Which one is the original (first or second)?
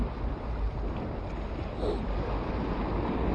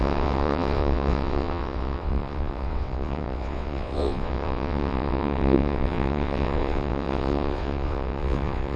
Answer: first